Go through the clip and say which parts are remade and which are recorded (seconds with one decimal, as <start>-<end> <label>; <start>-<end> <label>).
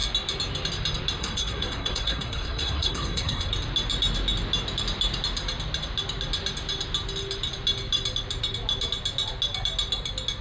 0.0-1.2 recorded; 1.2-3.5 remade; 3.5-10.4 recorded